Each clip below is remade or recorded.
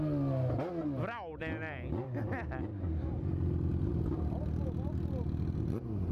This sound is recorded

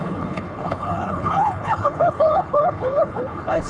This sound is remade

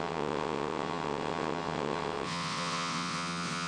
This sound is remade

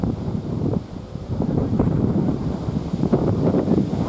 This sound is remade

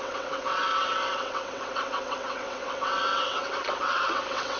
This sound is remade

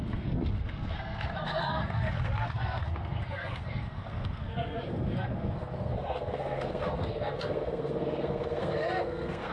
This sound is remade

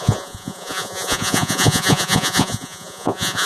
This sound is remade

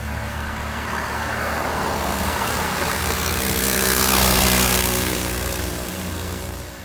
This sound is remade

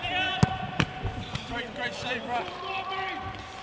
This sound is recorded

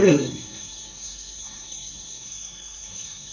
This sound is remade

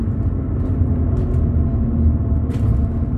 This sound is recorded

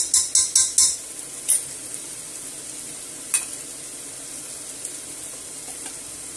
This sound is recorded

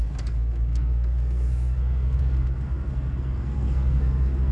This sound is remade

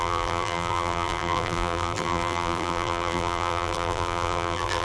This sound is remade